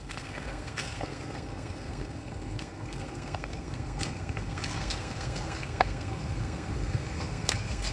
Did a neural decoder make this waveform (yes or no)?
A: yes